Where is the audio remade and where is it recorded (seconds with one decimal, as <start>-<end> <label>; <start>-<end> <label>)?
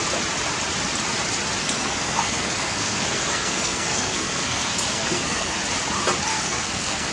0.0-1.6 recorded; 1.6-5.6 remade; 5.6-6.3 recorded; 6.3-7.1 remade